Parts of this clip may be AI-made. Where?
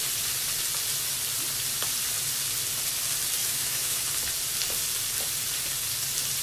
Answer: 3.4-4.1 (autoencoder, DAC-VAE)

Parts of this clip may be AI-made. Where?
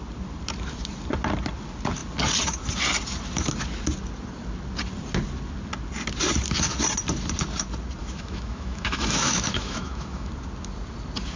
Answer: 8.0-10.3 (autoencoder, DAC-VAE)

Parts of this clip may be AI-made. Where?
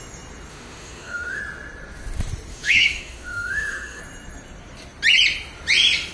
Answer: 0.5-1.4 (autoencoder, DAC-VAE); 2.5-4.0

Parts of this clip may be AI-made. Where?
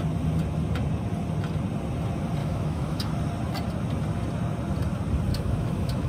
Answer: 2.4-3.1 (autoencoder, DAC-VAE); 5.3-6.1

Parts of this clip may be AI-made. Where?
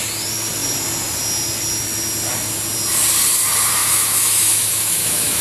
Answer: 3.8-5.4 (autoencoder, DAC-VAE)